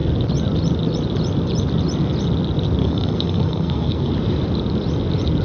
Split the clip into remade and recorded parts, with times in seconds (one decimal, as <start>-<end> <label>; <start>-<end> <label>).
0.0-2.8 recorded; 2.8-4.1 remade; 4.1-5.4 recorded